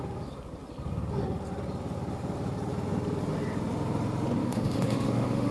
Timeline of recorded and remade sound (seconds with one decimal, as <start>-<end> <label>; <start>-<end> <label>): 0.0-4.4 recorded; 4.4-5.5 remade